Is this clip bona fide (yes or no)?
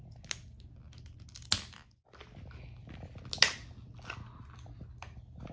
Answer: yes